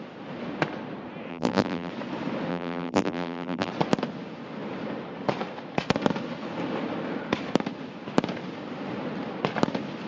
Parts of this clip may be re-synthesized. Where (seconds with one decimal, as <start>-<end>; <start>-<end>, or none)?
1.3-1.9; 2.5-3.7